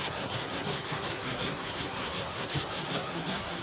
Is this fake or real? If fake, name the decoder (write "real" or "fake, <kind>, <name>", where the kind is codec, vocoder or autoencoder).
fake, codec, SNAC